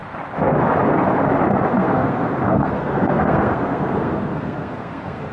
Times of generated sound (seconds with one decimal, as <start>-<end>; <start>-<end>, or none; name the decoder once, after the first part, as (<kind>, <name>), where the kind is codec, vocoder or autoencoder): 1.7-5.3 (codec, SNAC)